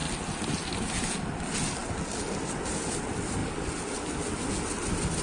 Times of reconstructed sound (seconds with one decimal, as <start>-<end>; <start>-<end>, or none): none